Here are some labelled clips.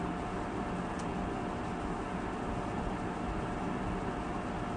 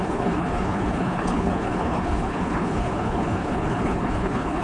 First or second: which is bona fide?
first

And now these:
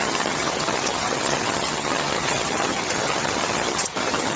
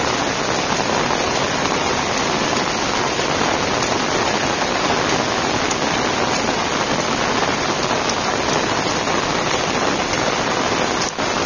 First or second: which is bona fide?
second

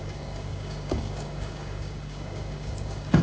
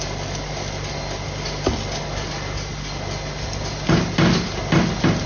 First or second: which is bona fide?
second